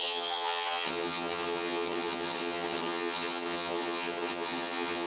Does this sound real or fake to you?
fake